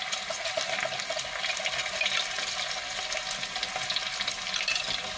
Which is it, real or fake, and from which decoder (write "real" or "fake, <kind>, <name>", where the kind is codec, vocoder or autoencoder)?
real